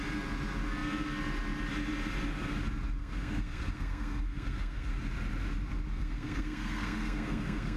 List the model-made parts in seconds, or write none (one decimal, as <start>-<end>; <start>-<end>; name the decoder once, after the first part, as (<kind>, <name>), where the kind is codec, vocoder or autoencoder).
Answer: 3.0-5.0 (codec, SNAC); 5.9-7.8